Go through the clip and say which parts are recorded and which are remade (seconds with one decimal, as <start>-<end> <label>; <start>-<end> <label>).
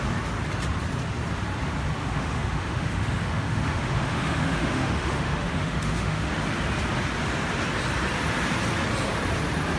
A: 0.0-2.0 recorded; 2.0-6.3 remade; 6.3-9.8 recorded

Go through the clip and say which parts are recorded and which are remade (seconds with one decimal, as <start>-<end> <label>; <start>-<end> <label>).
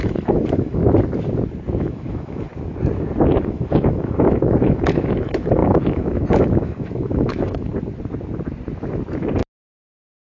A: 0.0-0.8 remade; 0.8-1.8 recorded; 1.8-2.5 remade; 2.5-3.5 recorded; 3.5-7.7 remade; 7.7-9.7 recorded; 9.7-10.2 remade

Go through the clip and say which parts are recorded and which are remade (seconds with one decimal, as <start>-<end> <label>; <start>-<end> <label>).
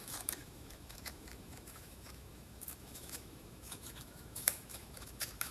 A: 0.0-5.5 remade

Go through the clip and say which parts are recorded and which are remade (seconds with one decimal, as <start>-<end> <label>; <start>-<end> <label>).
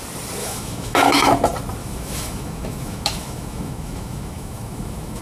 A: 0.0-0.4 recorded; 0.4-1.3 remade; 1.3-1.8 recorded; 1.8-5.2 remade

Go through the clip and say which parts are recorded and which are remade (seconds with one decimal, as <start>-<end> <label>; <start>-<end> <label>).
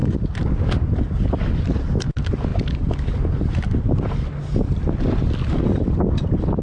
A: 0.0-6.6 recorded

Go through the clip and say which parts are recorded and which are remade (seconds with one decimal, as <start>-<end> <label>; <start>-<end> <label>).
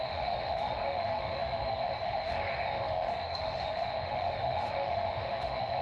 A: 0.0-5.8 remade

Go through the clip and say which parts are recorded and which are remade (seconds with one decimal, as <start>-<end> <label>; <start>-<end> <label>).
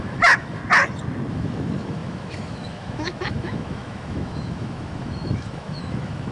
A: 0.0-0.6 remade; 0.6-1.3 recorded; 1.3-6.3 remade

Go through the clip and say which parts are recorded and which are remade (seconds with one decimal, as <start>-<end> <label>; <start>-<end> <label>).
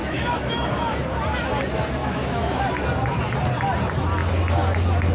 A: 0.0-1.0 remade; 1.0-2.0 recorded; 2.0-2.6 remade; 2.6-5.1 recorded